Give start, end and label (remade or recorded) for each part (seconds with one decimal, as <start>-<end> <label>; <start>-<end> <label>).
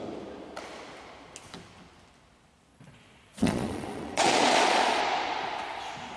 0.0-2.7 recorded; 2.7-5.0 remade; 5.0-6.2 recorded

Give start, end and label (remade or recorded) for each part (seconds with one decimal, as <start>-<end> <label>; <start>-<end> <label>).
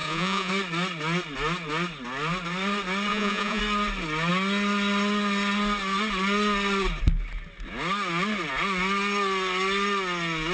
0.0-0.5 remade; 0.5-3.1 recorded; 3.1-3.6 remade; 3.6-10.5 recorded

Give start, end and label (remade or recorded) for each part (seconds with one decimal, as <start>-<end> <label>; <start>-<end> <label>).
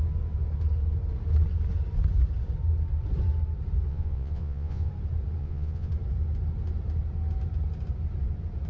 0.0-3.9 recorded; 3.9-4.9 remade; 4.9-5.4 recorded; 5.4-5.9 remade; 5.9-8.7 recorded